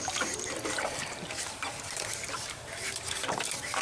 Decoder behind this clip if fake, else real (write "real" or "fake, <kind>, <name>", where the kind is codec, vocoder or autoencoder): fake, vocoder, BigVGAN v2